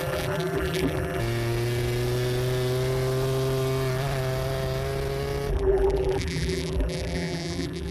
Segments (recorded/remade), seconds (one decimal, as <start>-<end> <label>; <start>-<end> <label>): 0.0-1.2 remade; 1.2-5.5 recorded; 5.5-7.9 remade